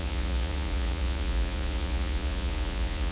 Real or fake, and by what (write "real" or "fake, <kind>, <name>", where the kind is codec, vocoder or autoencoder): fake, vocoder, Vocos